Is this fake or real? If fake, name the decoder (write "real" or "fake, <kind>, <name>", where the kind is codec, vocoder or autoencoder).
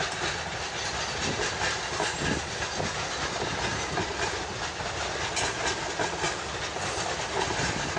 real